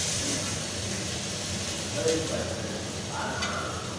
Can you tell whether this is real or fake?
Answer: real